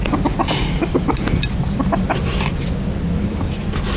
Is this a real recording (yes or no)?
yes